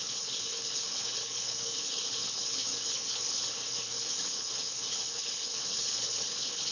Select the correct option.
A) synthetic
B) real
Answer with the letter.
A